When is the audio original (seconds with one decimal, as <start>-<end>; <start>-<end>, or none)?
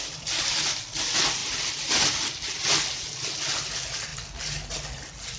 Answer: 0.0-5.4